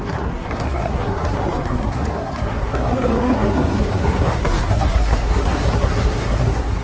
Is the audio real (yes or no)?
no